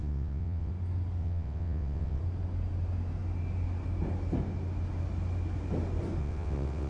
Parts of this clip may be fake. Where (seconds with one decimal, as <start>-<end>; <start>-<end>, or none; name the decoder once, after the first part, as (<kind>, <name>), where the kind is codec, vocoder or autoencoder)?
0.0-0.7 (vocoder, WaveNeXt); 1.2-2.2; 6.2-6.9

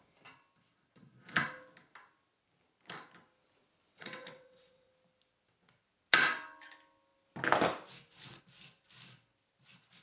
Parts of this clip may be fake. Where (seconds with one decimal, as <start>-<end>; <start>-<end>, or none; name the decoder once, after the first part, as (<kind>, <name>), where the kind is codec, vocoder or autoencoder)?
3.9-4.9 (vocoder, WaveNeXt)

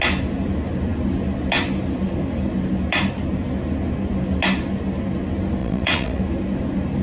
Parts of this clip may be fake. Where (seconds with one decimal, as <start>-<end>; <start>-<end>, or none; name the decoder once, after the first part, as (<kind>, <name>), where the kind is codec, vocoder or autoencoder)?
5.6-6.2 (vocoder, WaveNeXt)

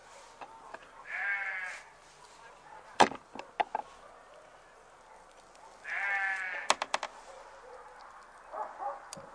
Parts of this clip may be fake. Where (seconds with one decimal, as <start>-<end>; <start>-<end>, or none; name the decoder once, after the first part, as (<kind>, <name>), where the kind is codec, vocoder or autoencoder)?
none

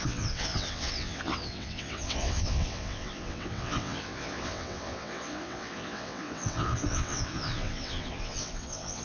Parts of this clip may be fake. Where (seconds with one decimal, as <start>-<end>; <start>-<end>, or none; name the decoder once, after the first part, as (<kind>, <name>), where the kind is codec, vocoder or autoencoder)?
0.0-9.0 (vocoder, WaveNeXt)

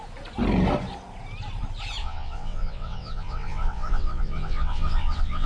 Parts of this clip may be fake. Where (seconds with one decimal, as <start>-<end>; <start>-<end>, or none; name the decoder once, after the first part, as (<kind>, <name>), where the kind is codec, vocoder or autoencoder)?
2.0-5.5 (vocoder, WaveNeXt)